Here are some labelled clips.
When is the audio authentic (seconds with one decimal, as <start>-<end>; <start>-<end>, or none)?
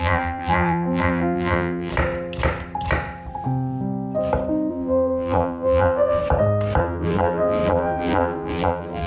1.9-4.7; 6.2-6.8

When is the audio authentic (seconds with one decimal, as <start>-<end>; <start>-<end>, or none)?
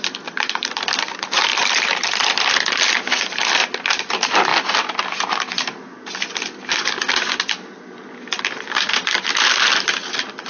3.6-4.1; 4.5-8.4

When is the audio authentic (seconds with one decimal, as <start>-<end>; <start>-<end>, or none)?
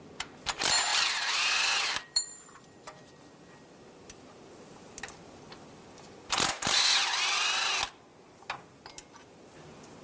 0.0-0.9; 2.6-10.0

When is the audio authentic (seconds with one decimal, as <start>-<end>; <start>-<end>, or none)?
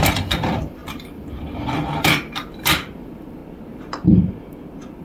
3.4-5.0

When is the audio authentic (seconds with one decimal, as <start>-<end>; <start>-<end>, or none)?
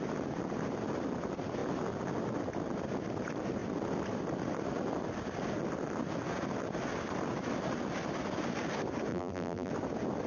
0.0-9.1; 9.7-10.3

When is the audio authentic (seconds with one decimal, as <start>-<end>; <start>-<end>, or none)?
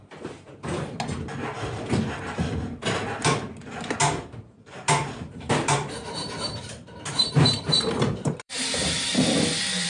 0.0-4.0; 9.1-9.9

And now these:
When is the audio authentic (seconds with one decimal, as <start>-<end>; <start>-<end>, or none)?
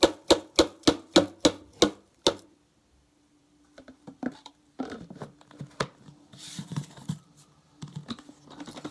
0.0-3.4; 8.2-8.9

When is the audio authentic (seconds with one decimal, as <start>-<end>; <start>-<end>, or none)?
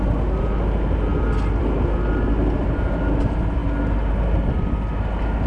0.0-5.5